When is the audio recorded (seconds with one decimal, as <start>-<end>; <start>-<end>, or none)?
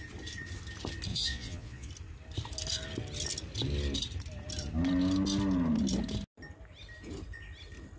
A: 0.0-1.1; 1.9-8.0